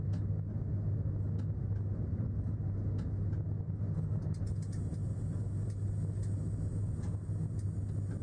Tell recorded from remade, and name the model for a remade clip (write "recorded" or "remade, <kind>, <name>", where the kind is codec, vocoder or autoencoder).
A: recorded